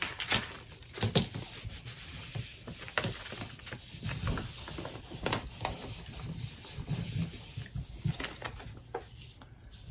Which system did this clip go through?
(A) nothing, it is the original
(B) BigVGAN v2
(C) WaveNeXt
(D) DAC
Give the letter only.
A